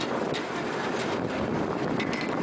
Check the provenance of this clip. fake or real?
real